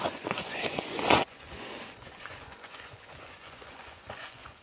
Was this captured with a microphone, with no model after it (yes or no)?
no